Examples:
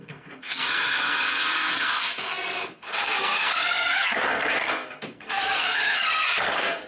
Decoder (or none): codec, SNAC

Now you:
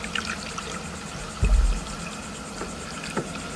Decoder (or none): none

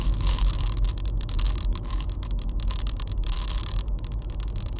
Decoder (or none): autoencoder, DAC-VAE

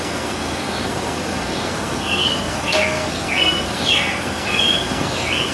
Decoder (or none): codec, SNAC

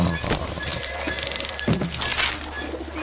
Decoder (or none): none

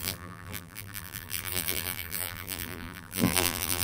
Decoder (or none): vocoder, BigVGAN v2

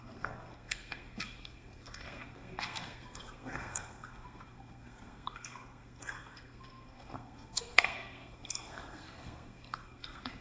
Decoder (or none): codec, SNAC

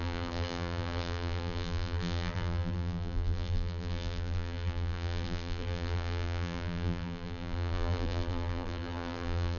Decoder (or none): vocoder, BigVGAN v2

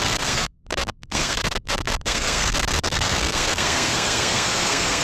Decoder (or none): codec, SNAC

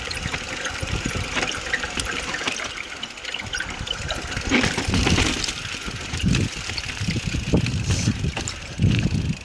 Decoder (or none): vocoder, BigVGAN v2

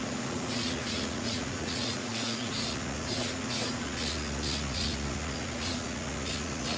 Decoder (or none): vocoder, Vocos